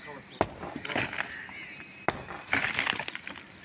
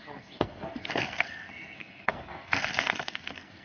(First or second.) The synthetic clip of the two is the second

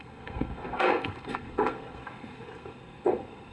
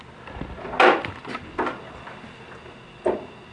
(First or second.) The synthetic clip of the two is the first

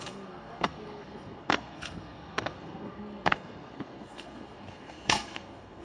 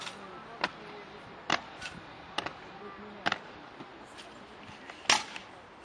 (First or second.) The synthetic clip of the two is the first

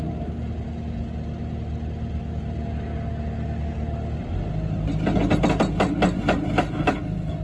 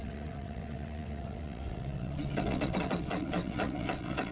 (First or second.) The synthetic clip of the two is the second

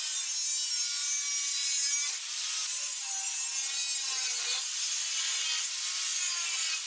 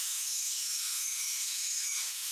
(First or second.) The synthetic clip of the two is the second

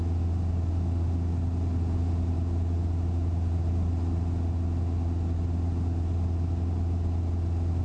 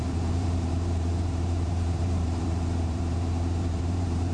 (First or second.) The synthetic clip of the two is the second